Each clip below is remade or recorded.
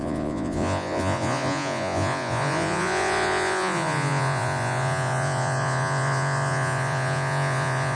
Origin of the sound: remade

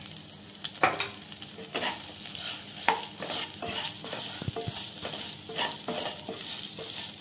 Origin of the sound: recorded